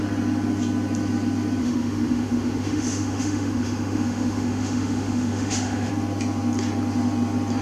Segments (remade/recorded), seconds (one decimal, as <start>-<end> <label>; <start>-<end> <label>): 0.0-1.6 recorded; 1.6-5.9 remade; 5.9-7.6 recorded